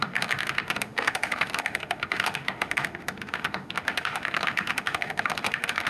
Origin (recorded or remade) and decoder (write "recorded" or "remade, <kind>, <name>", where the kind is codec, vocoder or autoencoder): remade, autoencoder, DAC-VAE